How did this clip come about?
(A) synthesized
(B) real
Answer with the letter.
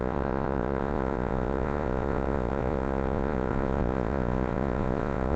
A